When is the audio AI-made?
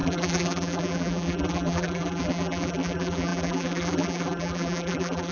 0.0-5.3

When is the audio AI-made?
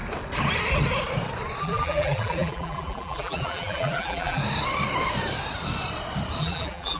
1.6-4.4; 6.4-7.0